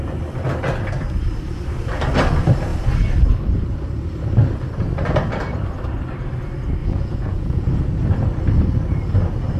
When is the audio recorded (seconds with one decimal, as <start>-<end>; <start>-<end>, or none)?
0.0-6.8; 7.8-9.6